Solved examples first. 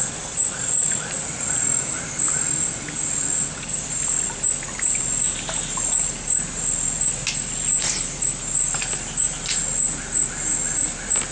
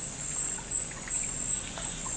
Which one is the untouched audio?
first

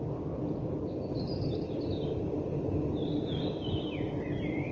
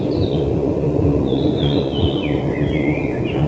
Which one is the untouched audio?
first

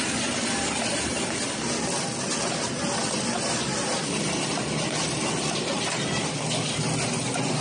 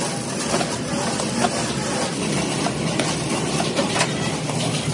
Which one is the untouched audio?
first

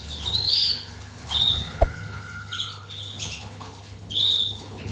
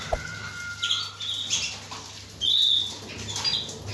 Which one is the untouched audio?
second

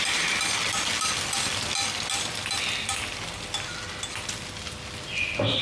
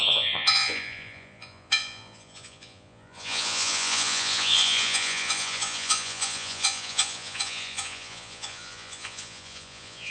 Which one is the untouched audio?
first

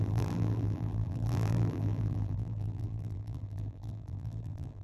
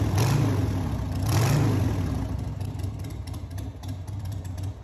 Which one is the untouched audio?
second